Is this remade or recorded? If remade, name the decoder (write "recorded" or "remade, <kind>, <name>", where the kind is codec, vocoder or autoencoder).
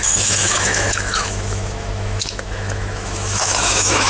remade, autoencoder, DAC-VAE